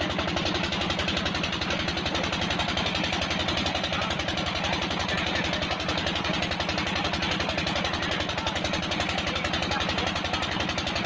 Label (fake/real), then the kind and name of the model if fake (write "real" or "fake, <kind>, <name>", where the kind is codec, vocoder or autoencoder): real